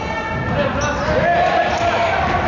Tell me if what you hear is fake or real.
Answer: real